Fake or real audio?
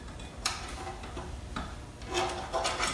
real